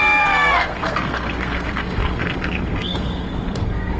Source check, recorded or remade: remade